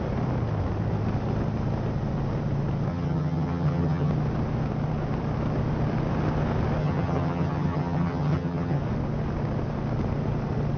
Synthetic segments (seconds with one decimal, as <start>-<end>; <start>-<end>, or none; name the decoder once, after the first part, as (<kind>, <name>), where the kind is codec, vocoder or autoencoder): 2.9-4.1 (vocoder, HiFi-GAN); 6.8-8.8